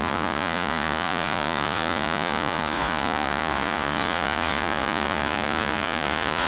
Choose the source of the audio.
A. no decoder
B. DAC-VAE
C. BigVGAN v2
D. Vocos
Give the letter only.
D